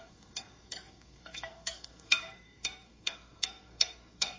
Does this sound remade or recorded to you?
remade